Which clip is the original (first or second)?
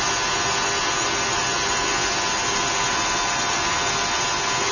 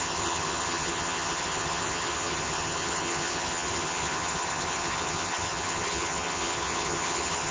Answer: first